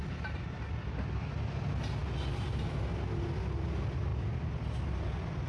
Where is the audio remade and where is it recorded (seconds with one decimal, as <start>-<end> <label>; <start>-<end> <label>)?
0.0-5.5 recorded